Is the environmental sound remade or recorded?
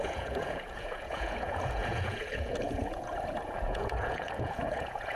remade